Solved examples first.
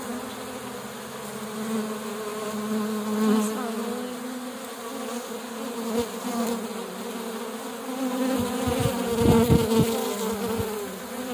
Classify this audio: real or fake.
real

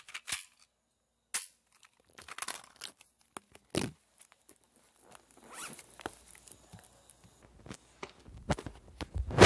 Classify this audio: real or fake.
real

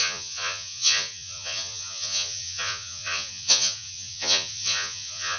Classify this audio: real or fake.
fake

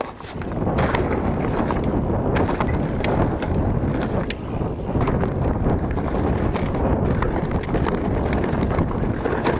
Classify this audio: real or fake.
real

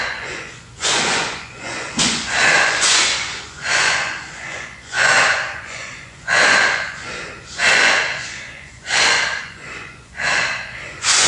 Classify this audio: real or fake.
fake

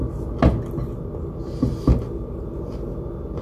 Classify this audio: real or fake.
real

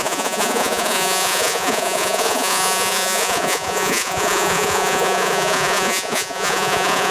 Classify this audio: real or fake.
fake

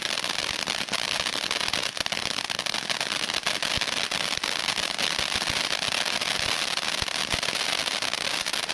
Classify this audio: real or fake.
real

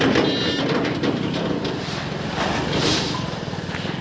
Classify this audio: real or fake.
real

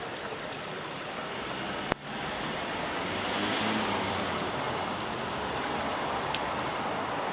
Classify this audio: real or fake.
real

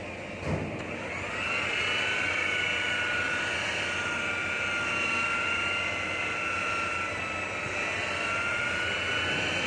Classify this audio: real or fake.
real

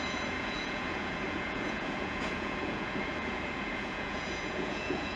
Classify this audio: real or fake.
fake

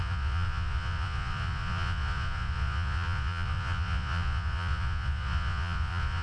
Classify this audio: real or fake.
fake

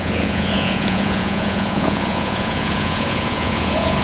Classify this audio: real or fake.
fake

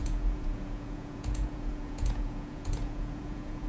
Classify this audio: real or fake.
fake